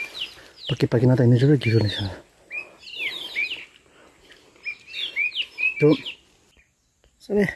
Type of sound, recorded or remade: recorded